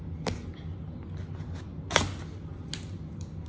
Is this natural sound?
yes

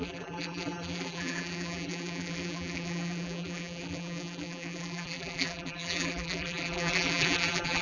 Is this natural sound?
no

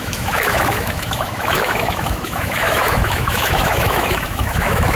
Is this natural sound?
no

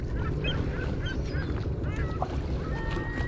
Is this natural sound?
yes